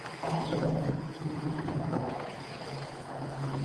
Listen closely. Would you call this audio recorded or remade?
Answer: remade